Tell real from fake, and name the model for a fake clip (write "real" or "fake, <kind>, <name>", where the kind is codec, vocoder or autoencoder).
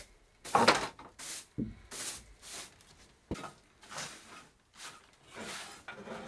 real